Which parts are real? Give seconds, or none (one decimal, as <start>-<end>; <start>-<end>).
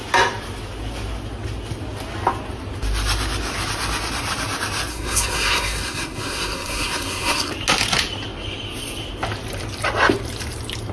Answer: 0.0-4.9; 7.5-10.9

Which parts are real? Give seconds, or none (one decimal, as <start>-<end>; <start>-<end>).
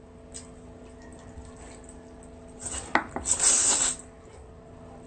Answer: 0.0-5.1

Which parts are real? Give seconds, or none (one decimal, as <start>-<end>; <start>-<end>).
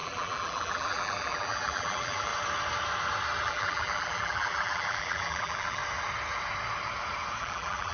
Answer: 2.3-3.4; 5.8-7.4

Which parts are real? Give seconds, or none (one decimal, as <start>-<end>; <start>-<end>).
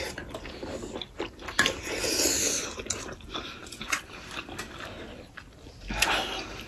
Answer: 0.0-3.4; 4.0-6.7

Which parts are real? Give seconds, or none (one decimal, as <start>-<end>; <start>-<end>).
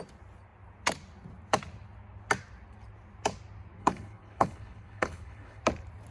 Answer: 0.0-3.8; 5.6-6.1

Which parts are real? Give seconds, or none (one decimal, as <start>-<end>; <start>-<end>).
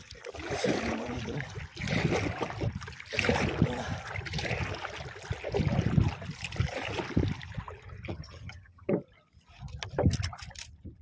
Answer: 0.0-8.1; 8.9-11.0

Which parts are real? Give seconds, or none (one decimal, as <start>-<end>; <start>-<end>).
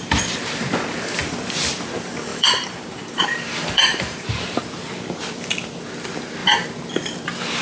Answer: 0.0-2.3; 4.6-6.4; 6.9-7.6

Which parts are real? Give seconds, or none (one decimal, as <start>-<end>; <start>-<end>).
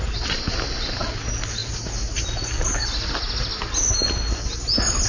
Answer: 0.0-5.1